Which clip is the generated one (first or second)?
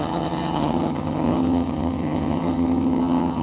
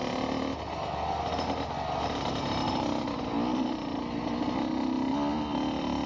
first